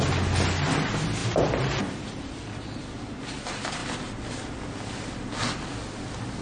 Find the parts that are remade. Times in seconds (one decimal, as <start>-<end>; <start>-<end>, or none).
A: 1.2-2.3; 3.8-5.4